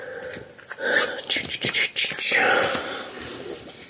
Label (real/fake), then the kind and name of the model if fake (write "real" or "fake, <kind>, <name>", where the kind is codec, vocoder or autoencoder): real